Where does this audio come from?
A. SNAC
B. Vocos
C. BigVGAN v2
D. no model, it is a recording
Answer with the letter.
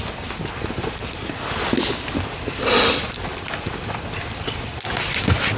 D